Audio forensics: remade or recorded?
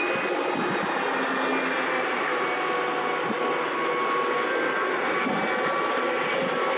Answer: recorded